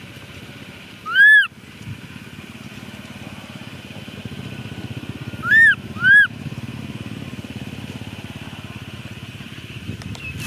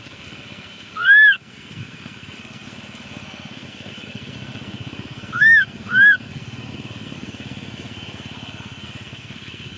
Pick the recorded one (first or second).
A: first